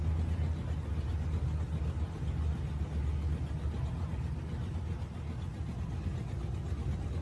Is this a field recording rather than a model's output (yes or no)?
yes